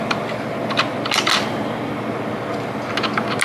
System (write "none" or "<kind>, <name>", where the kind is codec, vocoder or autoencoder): none